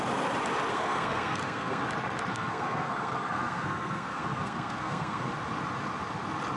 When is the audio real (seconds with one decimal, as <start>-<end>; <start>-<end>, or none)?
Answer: 0.0-0.7; 1.8-2.3; 5.3-6.6